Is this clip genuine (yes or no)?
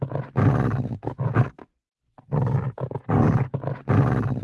yes